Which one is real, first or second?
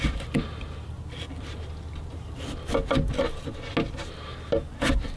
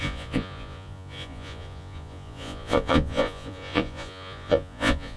first